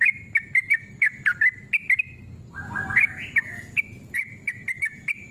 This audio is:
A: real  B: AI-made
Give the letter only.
A